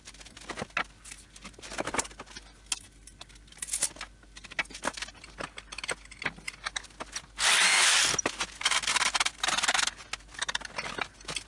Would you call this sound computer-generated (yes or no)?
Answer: no